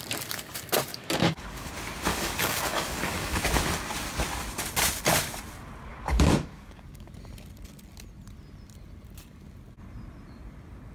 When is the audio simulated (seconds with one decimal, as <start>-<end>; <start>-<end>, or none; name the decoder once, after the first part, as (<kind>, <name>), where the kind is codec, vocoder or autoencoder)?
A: 0.9-1.7 (codec, DAC); 2.1-3.4; 5.9-7.1